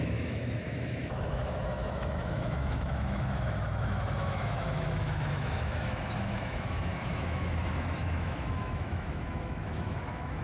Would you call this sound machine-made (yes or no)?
yes